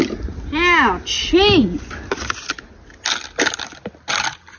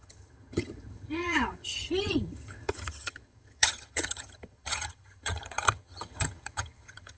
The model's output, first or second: second